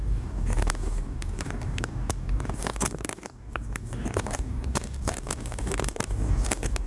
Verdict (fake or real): fake